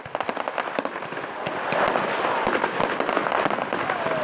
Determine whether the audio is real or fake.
real